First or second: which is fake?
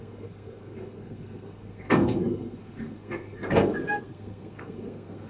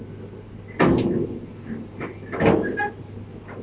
first